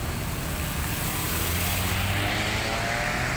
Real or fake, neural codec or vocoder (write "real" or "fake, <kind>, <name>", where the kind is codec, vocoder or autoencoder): real